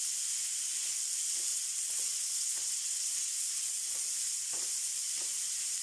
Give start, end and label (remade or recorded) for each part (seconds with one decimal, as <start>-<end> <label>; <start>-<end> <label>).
0.0-1.5 recorded; 1.5-4.1 remade; 4.1-5.8 recorded